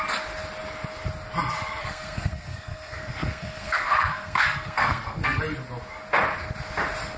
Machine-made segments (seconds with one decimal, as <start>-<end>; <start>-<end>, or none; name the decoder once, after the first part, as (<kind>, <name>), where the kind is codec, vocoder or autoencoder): 1.8-5.4 (codec, SNAC)